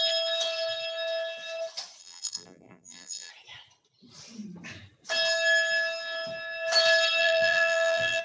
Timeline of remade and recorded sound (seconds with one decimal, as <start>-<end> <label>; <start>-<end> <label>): 0.0-2.0 recorded; 2.0-3.3 remade; 3.3-7.2 recorded; 7.2-8.2 remade